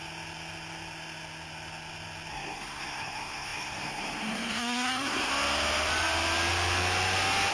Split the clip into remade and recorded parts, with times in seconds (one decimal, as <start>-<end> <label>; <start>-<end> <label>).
0.0-2.3 recorded; 2.3-5.3 remade; 5.3-7.5 recorded